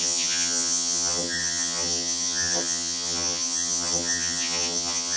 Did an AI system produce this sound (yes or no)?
yes